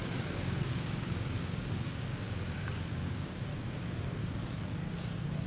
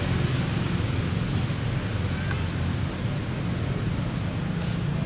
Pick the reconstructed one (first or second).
first